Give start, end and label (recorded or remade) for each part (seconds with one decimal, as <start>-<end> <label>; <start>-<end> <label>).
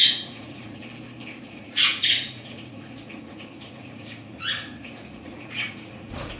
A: 0.0-0.8 remade; 0.8-1.4 recorded; 1.4-6.4 remade